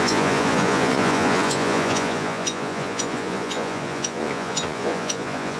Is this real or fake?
fake